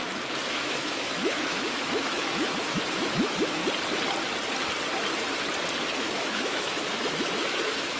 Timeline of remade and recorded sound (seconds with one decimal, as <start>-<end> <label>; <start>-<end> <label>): 0.0-0.5 recorded; 0.5-3.6 remade; 3.6-6.0 recorded; 6.0-8.0 remade